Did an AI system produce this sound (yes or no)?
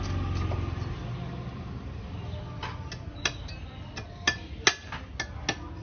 no